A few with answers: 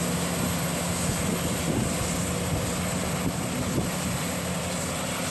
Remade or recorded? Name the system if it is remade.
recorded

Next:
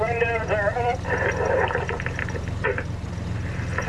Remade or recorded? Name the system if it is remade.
remade, vocoder, BigVGAN v2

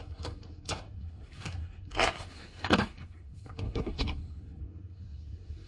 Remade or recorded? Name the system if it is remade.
remade, codec, SNAC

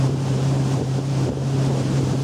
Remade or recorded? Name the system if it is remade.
remade, vocoder, BigVGAN v2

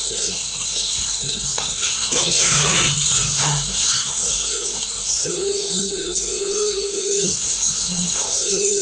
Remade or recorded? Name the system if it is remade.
remade, codec, SNAC